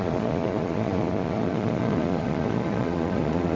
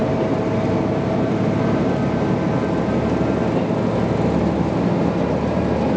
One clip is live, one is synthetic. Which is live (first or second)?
second